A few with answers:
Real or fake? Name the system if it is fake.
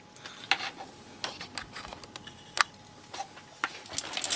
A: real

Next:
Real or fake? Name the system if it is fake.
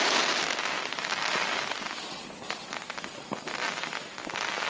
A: real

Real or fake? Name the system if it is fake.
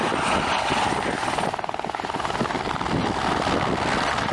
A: real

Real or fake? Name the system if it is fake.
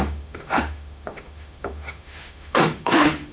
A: fake, autoencoder, DAC-VAE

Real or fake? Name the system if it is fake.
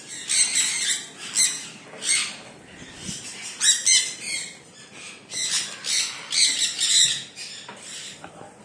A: real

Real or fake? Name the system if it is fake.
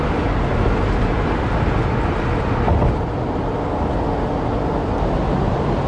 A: real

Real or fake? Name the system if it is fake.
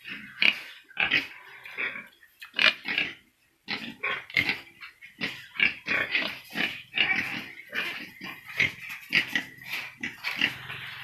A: real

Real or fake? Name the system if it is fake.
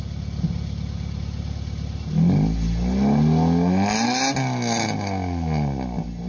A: real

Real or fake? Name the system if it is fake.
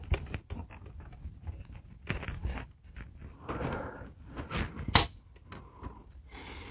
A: real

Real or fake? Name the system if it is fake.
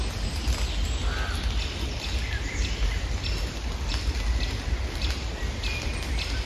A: real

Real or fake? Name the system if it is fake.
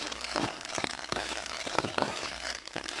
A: fake, codec, SNAC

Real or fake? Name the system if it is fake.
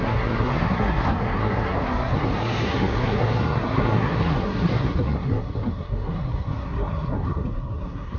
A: fake, codec, SNAC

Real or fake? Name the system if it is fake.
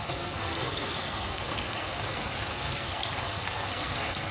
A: fake, codec, SNAC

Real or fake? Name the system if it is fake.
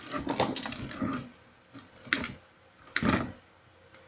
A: real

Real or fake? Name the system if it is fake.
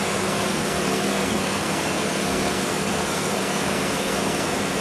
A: fake, codec, SNAC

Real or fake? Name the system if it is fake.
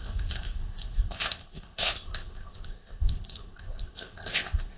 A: fake, codec, ZipCodec